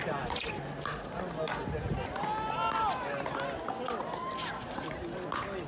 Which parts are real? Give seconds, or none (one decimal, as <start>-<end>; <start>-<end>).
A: 0.0-4.0; 5.0-5.7

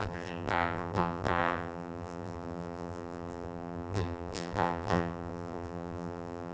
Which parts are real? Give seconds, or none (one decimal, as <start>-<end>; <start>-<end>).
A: none

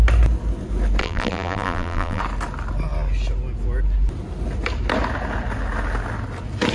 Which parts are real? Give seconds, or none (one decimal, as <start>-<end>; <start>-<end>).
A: 0.0-1.0; 2.2-6.7

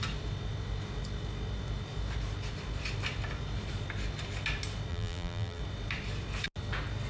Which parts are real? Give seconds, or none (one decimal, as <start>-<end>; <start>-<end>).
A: 0.0-4.9; 5.6-7.1

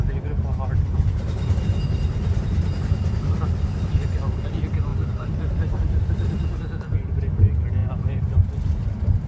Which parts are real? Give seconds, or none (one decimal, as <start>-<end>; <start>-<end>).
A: 0.0-4.9; 6.0-7.8; 8.5-9.3